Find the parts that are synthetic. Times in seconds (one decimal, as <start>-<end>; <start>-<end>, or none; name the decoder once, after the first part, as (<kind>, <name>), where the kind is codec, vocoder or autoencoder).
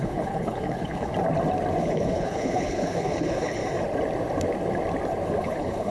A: 0.0-1.1 (codec, HILCodec); 1.8-3.6; 5.4-5.9